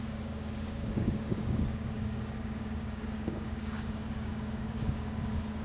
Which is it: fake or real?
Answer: fake